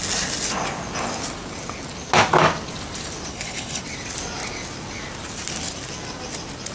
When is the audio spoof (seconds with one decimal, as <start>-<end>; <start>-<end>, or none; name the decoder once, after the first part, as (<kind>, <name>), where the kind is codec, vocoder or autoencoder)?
3.3-3.8 (codec, HILCodec)